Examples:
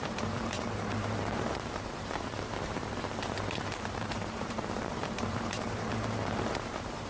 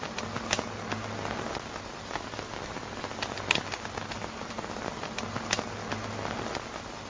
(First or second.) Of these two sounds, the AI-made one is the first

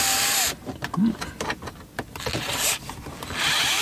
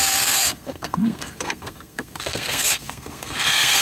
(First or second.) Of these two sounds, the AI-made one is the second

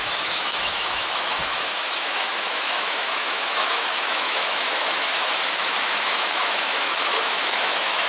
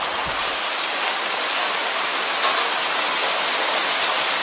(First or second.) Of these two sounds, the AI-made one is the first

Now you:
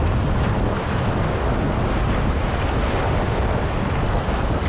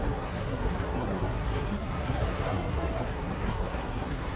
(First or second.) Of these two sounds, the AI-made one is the second